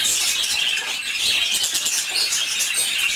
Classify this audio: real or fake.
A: real